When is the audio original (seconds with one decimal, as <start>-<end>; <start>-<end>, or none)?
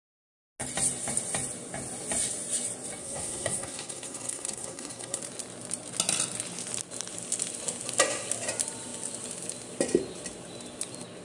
0.0-3.0; 5.2-11.2